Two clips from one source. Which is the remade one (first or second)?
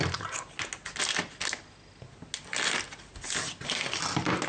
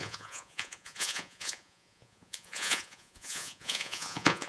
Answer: second